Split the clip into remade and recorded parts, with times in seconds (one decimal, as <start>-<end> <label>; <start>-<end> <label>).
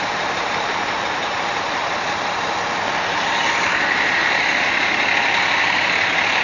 0.0-1.8 remade; 1.8-5.6 recorded; 5.6-6.4 remade